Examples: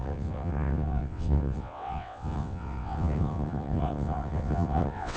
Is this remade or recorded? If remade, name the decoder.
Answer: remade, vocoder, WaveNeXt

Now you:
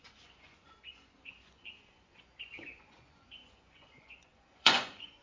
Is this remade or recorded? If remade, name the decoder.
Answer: remade, vocoder, Vocos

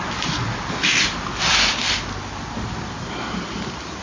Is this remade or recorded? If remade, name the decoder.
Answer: recorded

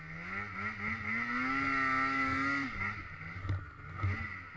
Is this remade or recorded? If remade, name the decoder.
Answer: recorded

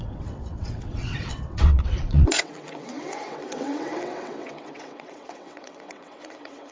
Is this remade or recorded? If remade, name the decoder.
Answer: remade, vocoder, WaveNeXt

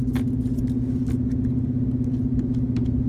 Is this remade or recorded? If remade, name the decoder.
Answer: recorded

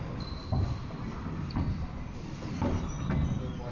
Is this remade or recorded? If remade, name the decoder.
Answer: recorded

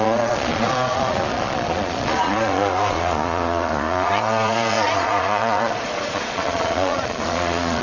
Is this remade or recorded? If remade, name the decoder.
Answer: remade, vocoder, Vocos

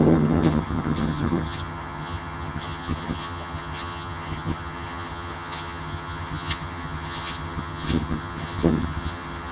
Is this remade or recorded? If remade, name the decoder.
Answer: remade, vocoder, HiFi-GAN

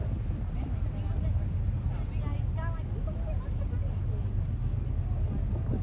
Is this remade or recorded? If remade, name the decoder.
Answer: recorded